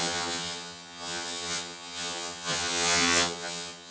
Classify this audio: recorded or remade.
remade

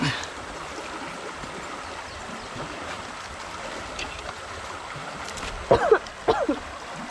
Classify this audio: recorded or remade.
recorded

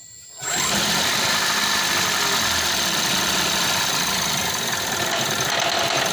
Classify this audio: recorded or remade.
recorded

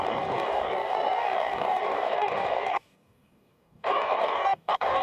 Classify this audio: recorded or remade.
remade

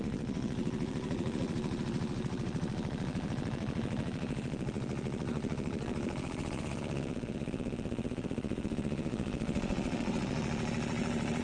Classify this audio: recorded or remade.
remade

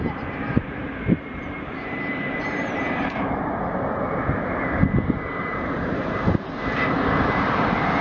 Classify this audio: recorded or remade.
remade